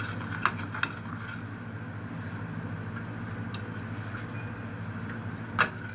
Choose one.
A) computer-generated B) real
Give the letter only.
B